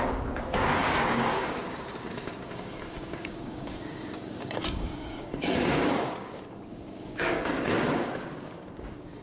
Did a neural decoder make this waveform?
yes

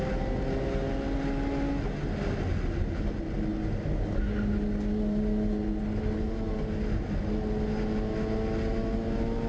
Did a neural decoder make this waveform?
no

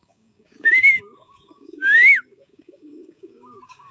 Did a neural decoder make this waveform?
yes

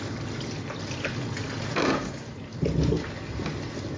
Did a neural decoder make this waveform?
no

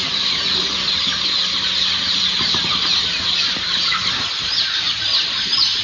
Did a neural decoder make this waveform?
no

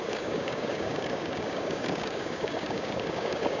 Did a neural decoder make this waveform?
yes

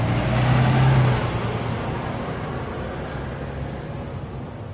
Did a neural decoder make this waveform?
no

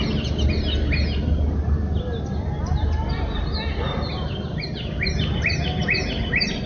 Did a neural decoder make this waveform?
no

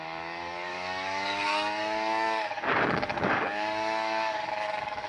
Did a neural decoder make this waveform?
yes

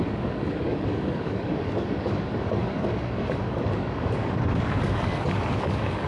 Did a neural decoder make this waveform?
yes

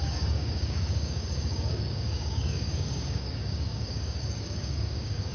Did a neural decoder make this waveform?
yes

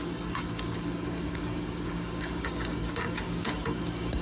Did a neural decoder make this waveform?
yes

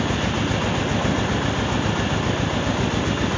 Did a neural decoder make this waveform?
no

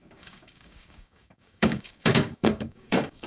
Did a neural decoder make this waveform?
yes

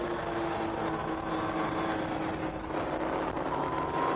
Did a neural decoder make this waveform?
no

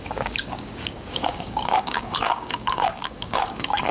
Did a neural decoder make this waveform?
yes